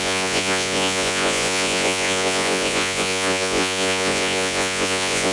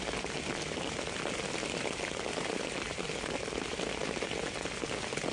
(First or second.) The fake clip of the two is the first